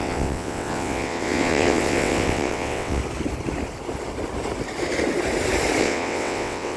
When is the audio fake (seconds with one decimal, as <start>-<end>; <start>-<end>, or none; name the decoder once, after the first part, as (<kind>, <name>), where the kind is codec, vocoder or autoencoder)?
0.0-3.0 (vocoder, WaveNeXt); 5.8-6.8